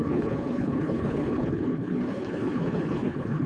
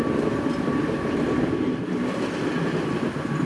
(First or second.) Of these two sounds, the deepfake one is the first